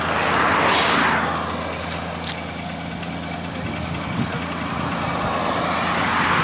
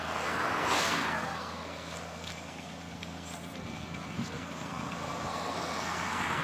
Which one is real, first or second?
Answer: first